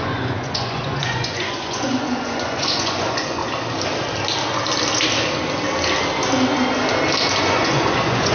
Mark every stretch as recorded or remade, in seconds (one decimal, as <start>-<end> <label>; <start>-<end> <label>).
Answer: 0.0-3.4 remade; 3.4-7.4 recorded; 7.4-8.3 remade